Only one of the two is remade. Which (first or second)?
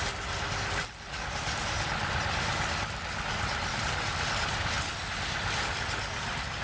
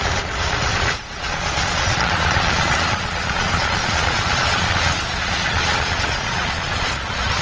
second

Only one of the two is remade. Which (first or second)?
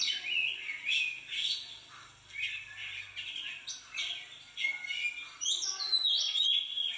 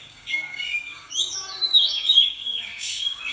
second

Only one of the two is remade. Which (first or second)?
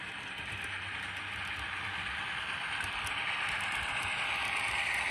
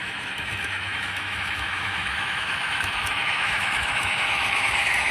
second